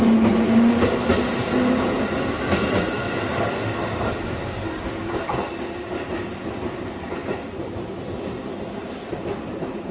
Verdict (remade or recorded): remade